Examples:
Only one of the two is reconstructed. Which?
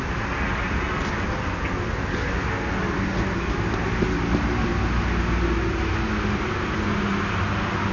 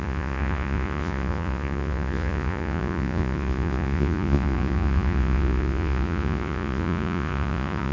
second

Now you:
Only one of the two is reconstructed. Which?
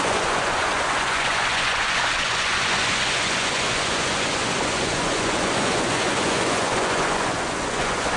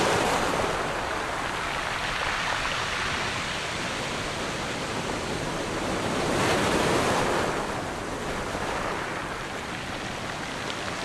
first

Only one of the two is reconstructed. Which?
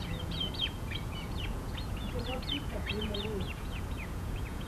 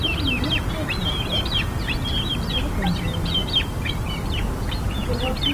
first